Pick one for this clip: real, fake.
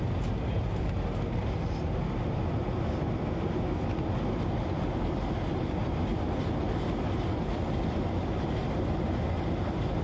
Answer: real